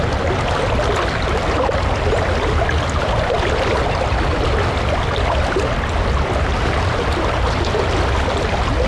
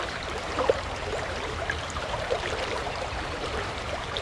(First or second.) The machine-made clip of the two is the second